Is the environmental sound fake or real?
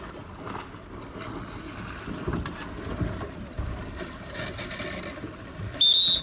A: real